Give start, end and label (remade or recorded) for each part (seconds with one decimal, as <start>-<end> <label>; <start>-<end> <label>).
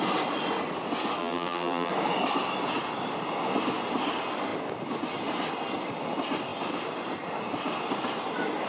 0.0-1.2 recorded; 1.2-1.9 remade; 1.9-8.7 recorded